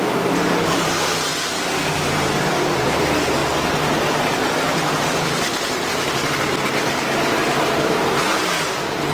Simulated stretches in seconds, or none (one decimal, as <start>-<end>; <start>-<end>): 0.0-3.4; 7.2-9.1